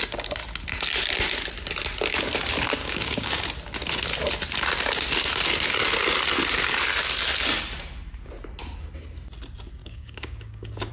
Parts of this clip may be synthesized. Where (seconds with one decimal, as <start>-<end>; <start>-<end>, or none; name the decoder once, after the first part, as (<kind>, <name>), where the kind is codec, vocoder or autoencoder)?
2.8-3.4 (codec, DAC); 9.8-10.9